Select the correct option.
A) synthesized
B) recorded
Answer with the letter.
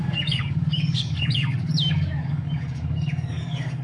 A